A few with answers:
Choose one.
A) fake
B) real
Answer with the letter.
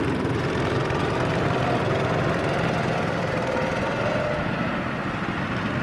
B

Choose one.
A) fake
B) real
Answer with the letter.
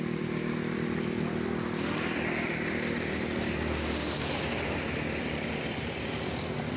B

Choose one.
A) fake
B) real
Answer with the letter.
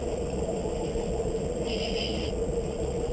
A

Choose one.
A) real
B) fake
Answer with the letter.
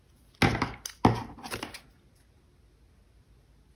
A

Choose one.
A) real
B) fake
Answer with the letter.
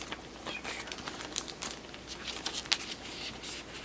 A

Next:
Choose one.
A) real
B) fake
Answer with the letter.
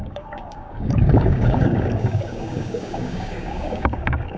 B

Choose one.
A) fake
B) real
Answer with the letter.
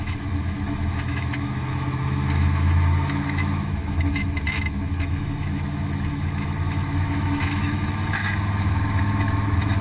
A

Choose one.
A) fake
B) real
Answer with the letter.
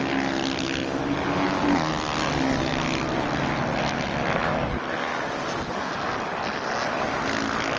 B